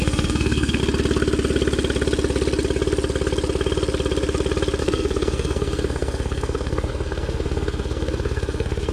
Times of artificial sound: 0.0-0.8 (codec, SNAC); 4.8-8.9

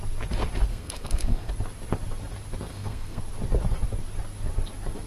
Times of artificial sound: 0.7-1.5 (codec, SNAC); 2.7-3.2

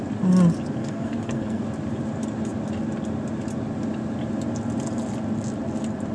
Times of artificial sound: 0.8-1.6 (codec, SNAC)

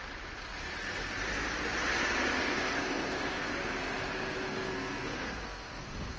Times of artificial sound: 2.5-3.8 (codec, SNAC); 4.5-6.2

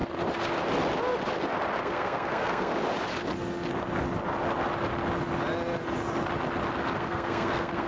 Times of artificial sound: 1.8-2.7 (codec, SNAC); 7.0-7.9

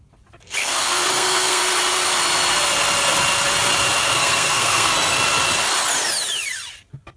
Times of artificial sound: 0.6-1.6 (codec, SNAC); 4.0-4.9